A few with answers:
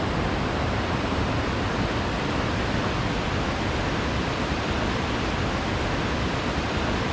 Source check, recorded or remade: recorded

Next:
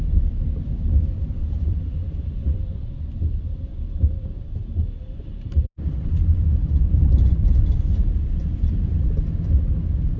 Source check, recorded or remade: remade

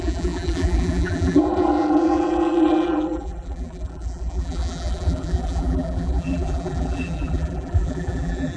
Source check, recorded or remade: remade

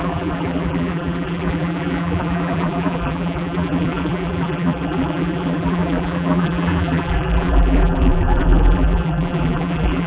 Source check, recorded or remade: remade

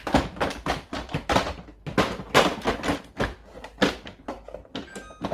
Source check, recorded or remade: recorded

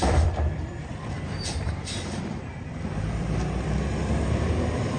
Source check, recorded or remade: remade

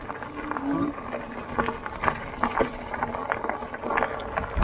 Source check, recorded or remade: recorded